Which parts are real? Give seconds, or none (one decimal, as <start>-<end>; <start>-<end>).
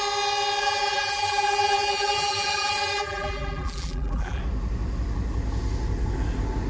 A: 0.0-0.6; 4.4-6.7